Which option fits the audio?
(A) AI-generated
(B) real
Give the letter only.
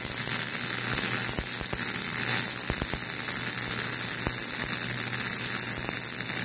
B